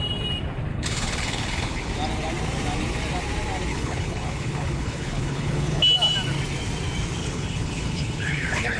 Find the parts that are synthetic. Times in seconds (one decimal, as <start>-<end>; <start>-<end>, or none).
0.7-1.9; 3.7-5.8; 7.2-8.8